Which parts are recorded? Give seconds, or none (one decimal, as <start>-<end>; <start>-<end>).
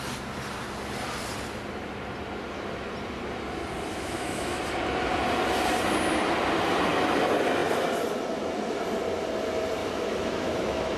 0.0-3.9; 4.6-9.8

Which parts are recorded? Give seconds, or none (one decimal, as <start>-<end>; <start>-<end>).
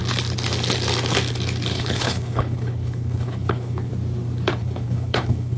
0.0-1.7; 3.9-4.6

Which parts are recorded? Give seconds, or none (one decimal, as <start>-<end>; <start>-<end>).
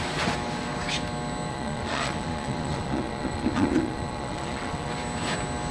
0.0-1.5; 4.9-5.7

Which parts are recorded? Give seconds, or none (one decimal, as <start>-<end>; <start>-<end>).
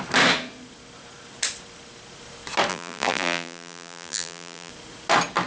0.0-2.7; 4.7-5.5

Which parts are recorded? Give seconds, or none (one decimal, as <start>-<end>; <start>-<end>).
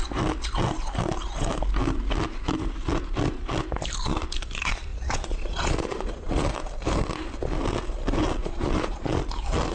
0.0-4.9; 6.5-8.4; 9.2-9.7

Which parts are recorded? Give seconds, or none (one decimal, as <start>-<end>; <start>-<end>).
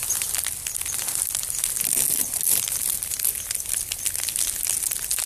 0.0-2.2; 2.8-5.3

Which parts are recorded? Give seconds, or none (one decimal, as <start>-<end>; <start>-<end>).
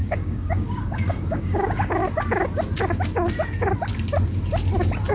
2.0-5.1